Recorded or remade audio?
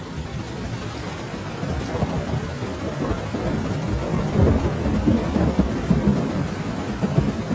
recorded